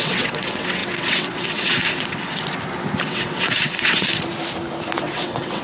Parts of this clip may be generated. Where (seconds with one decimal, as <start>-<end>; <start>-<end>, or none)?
0.0-2.4; 3.0-4.1; 5.0-5.6